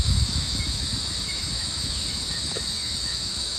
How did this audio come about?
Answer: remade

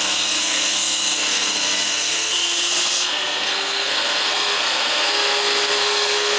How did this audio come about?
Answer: remade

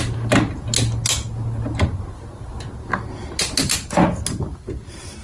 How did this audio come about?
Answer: recorded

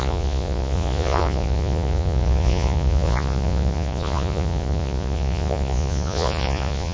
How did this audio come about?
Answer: remade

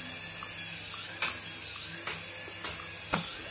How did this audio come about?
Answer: recorded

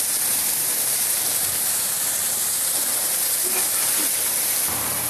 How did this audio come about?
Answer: remade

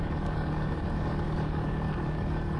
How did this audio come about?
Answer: remade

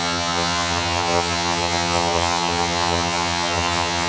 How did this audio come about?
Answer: remade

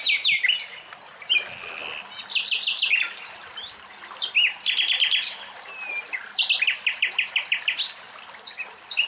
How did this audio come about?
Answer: recorded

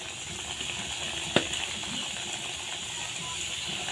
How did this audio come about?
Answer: recorded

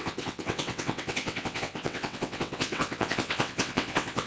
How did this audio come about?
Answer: remade